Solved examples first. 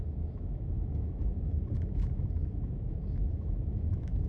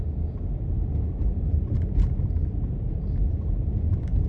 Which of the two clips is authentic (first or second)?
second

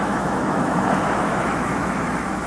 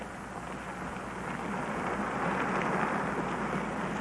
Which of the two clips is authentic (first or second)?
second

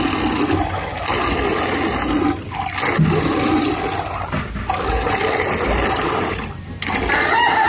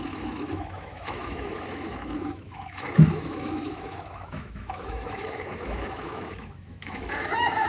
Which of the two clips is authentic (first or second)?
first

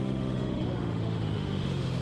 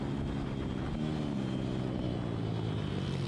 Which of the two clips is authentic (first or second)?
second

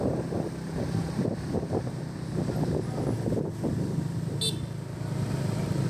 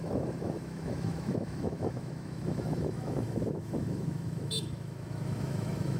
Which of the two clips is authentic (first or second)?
first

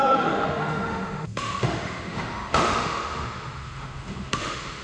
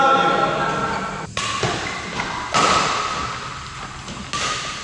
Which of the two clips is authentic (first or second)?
second